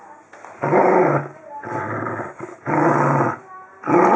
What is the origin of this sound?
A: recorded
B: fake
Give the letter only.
A